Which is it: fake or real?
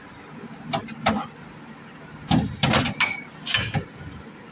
real